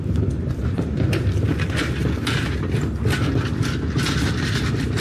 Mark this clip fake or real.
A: real